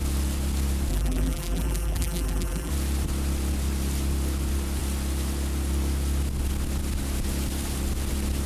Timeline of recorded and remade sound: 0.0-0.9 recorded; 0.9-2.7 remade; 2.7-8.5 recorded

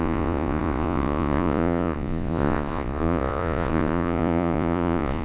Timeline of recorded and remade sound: 0.0-5.2 remade

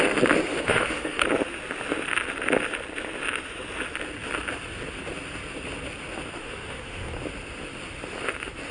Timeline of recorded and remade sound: 0.0-0.5 recorded; 0.5-1.2 remade; 1.2-6.4 recorded; 6.4-7.1 remade; 7.1-8.7 recorded

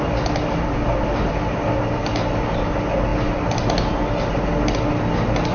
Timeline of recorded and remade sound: 0.0-5.5 recorded

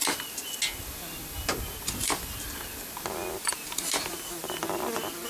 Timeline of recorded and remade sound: 0.0-3.5 recorded; 3.5-4.6 remade; 4.6-5.3 recorded

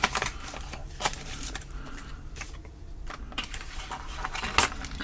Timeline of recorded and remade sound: 0.0-0.8 recorded; 0.8-3.8 remade; 3.8-5.0 recorded

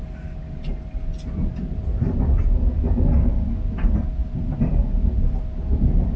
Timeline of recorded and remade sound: 0.0-6.2 recorded

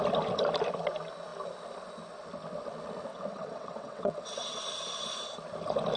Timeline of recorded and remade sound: 0.0-3.1 recorded; 3.1-4.6 remade; 4.6-6.0 recorded